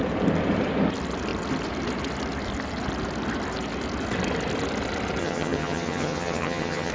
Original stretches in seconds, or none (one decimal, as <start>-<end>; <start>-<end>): 0.0-5.2